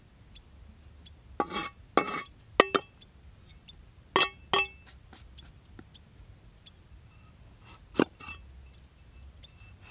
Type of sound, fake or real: real